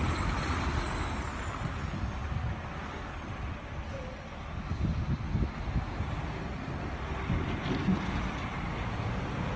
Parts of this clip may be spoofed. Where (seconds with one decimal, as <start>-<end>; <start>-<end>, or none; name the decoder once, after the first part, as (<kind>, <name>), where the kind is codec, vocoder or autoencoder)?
none